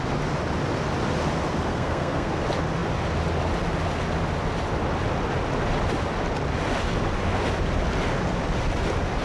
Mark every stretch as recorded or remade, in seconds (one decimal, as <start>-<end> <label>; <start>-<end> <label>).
0.0-1.7 recorded; 1.7-2.4 remade; 2.4-9.2 recorded